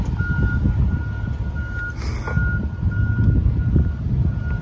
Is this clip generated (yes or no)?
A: no